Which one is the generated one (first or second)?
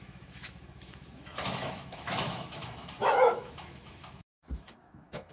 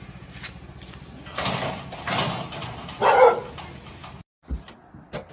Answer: first